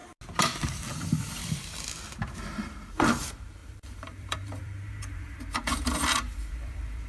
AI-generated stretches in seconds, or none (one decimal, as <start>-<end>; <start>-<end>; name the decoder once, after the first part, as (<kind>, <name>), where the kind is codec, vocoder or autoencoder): 0.9-1.4 (vocoder, BigVGAN v2); 2.5-7.1

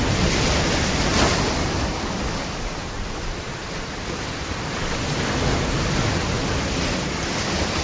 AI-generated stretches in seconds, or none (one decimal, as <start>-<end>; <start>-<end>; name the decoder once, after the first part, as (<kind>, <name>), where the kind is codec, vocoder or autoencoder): none

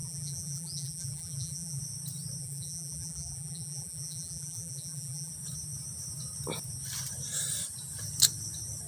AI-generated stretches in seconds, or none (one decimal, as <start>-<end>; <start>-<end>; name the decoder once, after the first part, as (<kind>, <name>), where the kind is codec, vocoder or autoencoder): 0.0-1.8 (vocoder, BigVGAN v2); 2.4-5.3

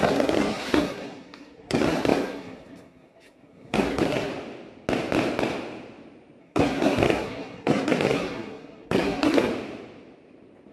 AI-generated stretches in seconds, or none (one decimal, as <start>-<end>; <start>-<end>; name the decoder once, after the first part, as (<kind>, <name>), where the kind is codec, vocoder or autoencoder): 0.0-4.3 (codec, SNAC); 6.4-9.5

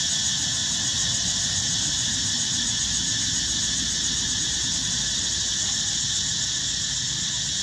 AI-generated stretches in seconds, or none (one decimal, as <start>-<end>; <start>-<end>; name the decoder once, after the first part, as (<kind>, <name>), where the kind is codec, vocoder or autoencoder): none